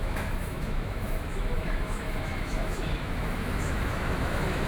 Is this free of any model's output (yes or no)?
no